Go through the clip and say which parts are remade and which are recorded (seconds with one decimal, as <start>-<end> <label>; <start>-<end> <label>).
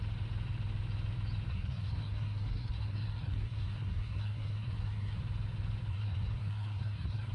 0.0-1.5 recorded; 1.5-5.2 remade; 5.2-5.9 recorded; 5.9-7.3 remade